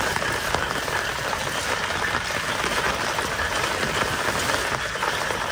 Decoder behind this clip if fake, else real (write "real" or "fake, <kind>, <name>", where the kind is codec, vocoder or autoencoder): real